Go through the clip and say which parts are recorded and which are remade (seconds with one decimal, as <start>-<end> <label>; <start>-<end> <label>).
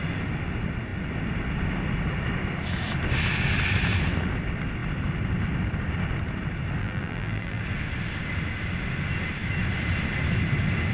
0.0-6.8 recorded; 6.8-7.6 remade; 7.6-10.9 recorded